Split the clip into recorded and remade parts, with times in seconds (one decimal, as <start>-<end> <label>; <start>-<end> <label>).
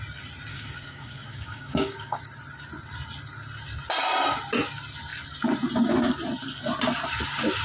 0.0-0.5 recorded; 0.5-2.2 remade; 2.2-7.6 recorded